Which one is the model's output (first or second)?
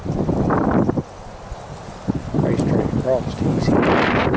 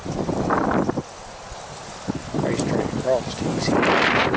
second